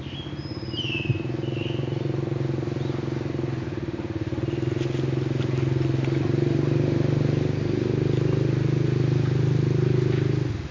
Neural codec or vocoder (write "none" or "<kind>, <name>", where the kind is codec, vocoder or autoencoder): none